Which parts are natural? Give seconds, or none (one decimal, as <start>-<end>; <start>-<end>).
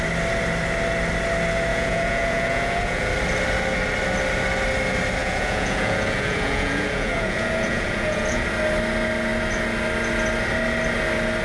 0.0-1.7; 3.1-5.2; 8.4-11.4